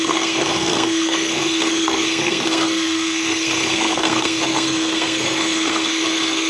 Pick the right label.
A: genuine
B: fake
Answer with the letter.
B